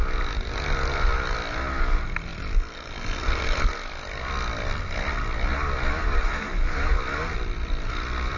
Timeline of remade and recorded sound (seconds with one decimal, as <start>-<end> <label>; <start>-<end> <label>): 0.0-8.4 recorded